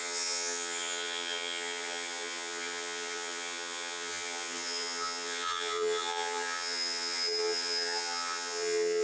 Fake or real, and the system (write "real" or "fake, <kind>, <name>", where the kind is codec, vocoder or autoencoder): fake, vocoder, HiFi-GAN